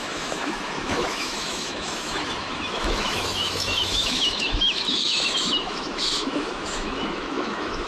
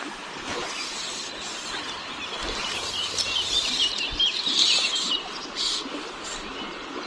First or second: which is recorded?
second